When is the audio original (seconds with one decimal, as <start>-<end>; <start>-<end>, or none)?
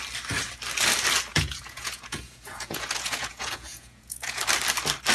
0.0-1.3; 4.4-5.1